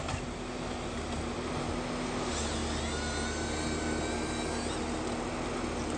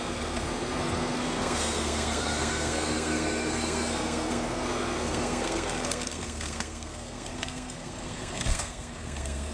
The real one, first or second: first